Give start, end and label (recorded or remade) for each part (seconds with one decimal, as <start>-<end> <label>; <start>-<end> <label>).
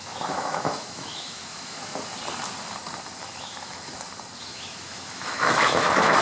0.0-1.9 remade; 1.9-3.2 recorded; 3.2-3.9 remade; 3.9-4.4 recorded; 4.4-6.2 remade